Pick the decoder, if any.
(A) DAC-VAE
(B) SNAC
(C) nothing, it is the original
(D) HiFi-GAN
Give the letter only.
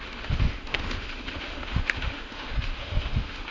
A